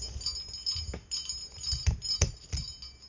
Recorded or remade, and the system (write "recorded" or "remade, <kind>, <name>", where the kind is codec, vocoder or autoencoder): recorded